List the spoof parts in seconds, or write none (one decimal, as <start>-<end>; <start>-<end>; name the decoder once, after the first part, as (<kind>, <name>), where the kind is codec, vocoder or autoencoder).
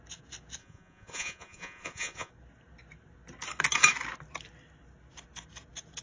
0.6-2.3 (vocoder, Vocos)